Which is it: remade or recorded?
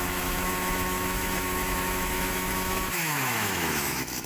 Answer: remade